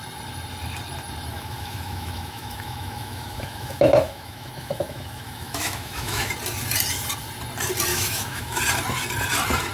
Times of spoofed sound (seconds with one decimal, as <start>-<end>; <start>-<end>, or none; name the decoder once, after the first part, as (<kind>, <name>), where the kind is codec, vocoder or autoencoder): 1.3-6.3 (autoencoder, DAC-VAE); 7.9-8.6